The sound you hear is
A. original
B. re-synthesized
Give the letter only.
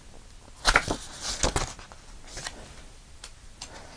A